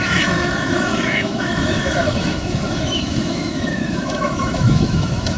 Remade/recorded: remade